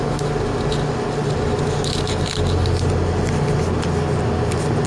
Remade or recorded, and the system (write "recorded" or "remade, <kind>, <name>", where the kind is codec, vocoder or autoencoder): recorded